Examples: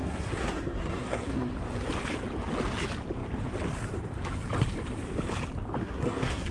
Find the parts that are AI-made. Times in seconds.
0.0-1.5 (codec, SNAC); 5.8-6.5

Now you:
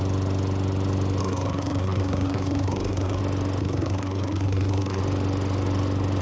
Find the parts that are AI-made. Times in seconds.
1.2-3.2 (codec, SNAC); 3.6-5.0

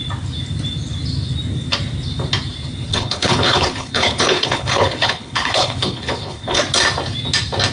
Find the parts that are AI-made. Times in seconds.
2.9-6.6 (codec, HILCodec)

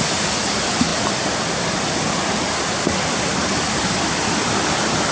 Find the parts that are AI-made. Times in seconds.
none

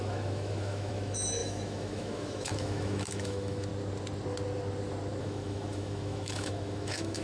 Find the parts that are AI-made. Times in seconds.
0.0-3.7 (autoencoder, DAC-VAE); 5.2-7.2